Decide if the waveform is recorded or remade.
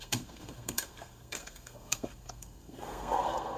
remade